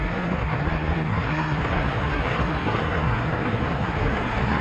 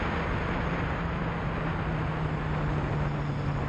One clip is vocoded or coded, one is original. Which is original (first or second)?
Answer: second